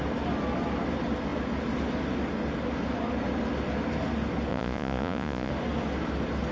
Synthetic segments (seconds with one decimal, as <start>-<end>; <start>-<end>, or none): 4.5-5.5

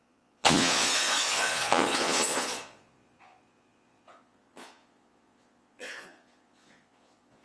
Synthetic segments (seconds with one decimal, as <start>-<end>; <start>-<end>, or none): 0.0-7.4

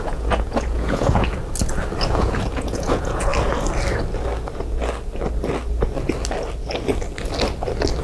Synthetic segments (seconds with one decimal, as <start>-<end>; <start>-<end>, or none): 0.0-1.4; 2.1-3.3

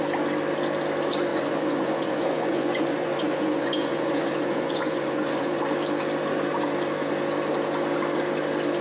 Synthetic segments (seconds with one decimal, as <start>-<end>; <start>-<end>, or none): 1.3-5.6

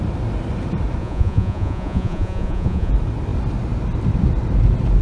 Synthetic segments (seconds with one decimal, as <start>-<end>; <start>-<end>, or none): 1.0-2.9

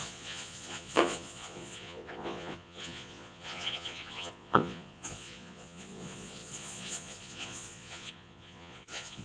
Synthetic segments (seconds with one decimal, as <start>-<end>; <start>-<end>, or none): 0.0-9.2

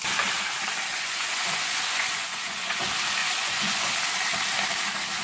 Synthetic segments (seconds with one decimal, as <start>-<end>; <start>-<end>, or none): 0.9-2.8; 3.2-3.9